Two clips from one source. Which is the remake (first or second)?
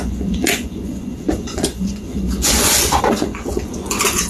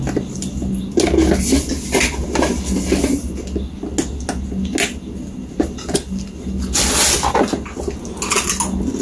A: first